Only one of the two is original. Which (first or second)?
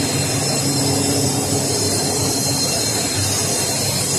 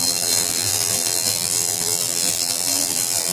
first